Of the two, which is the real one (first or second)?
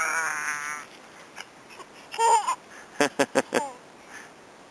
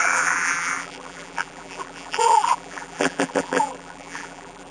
first